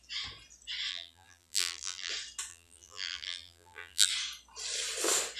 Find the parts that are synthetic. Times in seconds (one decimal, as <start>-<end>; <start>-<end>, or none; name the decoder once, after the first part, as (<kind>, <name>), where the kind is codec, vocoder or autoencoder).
0.9-2.1 (vocoder, BigVGAN v2); 2.5-4.1